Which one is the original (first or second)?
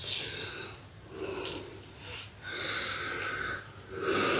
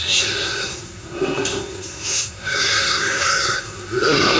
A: first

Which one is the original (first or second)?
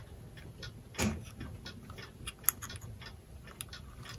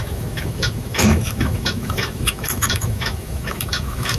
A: first